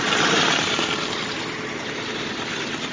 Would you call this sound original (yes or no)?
yes